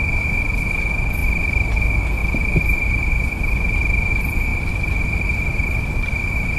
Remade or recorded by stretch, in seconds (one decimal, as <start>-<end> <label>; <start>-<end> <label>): 0.0-1.2 recorded; 1.2-1.8 remade; 1.8-2.2 recorded; 2.2-4.1 remade; 4.1-6.6 recorded